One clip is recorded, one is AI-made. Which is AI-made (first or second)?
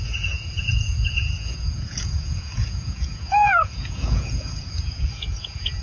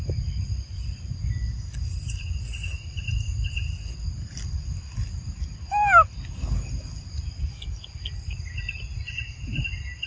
first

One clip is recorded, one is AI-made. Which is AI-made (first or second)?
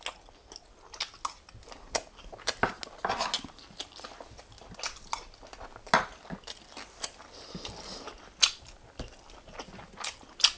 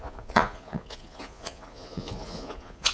second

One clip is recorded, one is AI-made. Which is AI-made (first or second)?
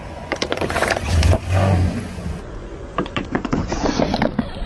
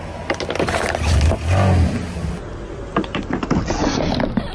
first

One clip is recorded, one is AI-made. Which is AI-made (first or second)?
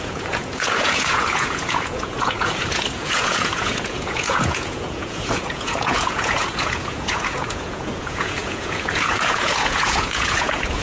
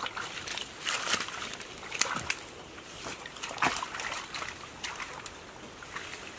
first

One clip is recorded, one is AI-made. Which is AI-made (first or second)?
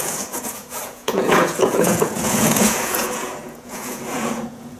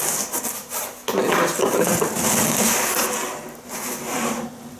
first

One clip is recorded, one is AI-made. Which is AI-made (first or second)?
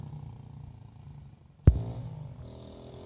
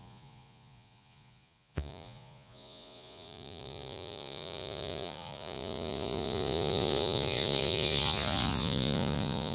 second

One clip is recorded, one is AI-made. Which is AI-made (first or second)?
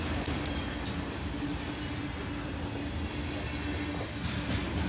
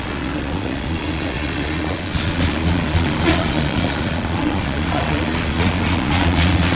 second